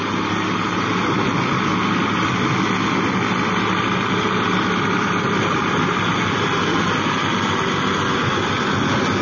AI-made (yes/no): no